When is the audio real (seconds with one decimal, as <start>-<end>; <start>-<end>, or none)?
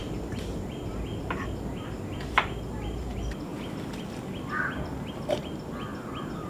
none